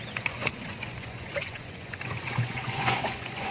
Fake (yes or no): yes